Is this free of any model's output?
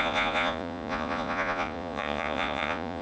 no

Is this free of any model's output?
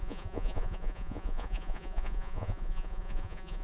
no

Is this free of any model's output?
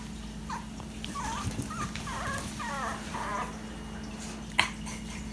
yes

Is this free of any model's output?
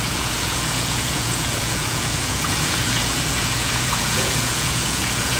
no